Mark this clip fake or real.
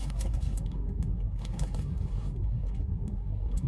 fake